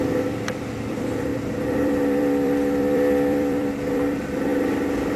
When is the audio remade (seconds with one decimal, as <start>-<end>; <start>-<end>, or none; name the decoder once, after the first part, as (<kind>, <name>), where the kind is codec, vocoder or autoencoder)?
0.0-5.2 (vocoder, BigVGAN v2)

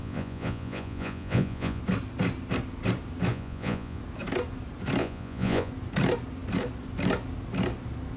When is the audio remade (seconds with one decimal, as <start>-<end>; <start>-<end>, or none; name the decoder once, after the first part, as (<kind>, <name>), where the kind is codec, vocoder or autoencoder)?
0.0-1.8 (vocoder, Vocos); 3.3-4.0; 5.0-5.7

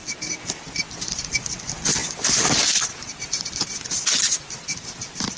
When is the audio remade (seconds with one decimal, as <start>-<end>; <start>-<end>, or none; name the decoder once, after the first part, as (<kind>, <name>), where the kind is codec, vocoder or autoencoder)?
none

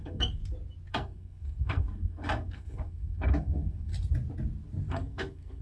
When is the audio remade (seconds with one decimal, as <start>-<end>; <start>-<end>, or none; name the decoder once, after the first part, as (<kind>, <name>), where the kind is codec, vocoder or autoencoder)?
0.0-0.4 (codec, SNAC); 0.9-3.9; 4.9-5.6